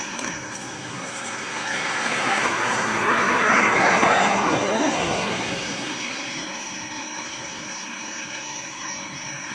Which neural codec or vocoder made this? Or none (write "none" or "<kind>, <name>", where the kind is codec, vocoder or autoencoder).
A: codec, SNAC